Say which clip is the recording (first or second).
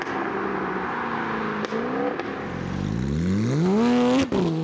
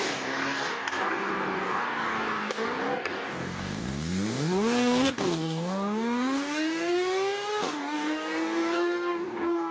first